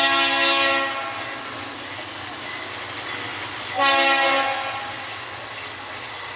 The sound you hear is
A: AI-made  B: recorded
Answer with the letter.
B